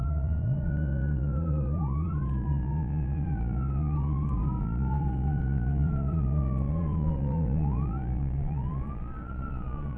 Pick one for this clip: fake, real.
fake